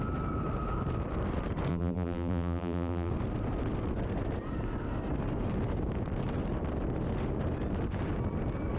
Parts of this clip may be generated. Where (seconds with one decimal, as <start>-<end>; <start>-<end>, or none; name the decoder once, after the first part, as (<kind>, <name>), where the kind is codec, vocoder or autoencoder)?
1.7-3.1 (vocoder, BigVGAN v2)

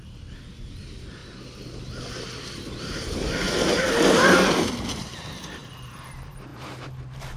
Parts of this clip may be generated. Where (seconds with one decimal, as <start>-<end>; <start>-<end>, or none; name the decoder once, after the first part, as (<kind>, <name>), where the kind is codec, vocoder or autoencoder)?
0.0-1.2 (vocoder, BigVGAN v2); 2.5-5.1; 5.8-7.4

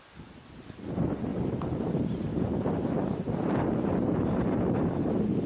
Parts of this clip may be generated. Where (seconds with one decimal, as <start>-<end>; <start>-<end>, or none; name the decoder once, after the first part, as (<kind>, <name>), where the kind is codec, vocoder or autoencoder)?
1.3-4.6 (vocoder, BigVGAN v2)

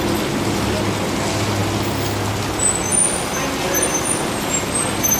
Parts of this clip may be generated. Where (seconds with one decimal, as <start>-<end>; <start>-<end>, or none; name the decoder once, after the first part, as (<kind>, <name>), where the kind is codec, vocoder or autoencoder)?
none

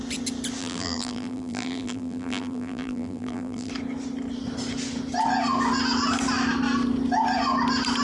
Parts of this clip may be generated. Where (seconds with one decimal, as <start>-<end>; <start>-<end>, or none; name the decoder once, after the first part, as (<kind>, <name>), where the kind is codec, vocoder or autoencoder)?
0.6-3.7 (vocoder, BigVGAN v2)

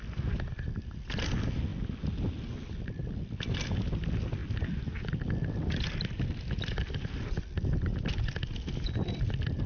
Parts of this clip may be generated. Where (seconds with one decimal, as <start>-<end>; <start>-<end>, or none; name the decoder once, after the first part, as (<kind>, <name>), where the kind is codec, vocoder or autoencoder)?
none

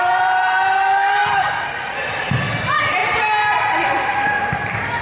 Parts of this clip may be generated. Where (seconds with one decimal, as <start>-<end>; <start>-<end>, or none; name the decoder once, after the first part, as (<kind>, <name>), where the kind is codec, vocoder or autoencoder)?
0.0-5.0 (vocoder, BigVGAN v2)